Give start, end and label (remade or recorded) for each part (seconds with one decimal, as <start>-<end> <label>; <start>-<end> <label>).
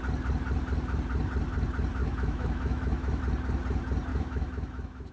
0.0-2.0 recorded; 2.0-3.2 remade; 3.2-4.1 recorded; 4.1-5.1 remade